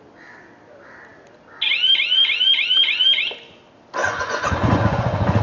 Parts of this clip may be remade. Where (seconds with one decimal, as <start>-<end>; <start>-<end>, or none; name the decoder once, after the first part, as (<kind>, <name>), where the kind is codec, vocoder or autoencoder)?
4.0-5.4 (vocoder, Vocos)